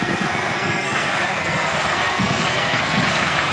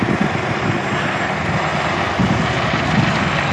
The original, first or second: second